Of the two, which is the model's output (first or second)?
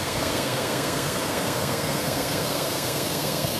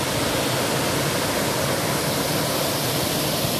first